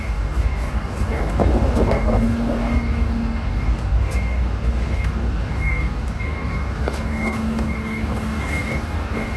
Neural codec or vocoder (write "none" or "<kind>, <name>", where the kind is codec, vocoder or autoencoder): codec, DAC